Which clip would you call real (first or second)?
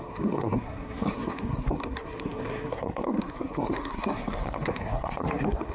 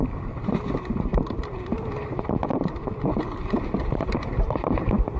second